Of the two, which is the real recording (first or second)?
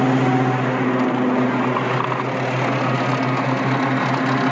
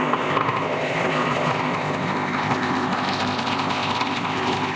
first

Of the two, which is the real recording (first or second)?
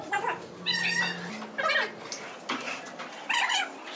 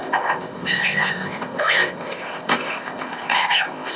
first